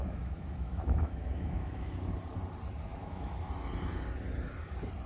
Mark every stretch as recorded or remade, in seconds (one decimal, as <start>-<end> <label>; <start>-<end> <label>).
0.0-2.1 remade; 2.1-2.9 recorded; 2.9-3.5 remade; 3.5-5.1 recorded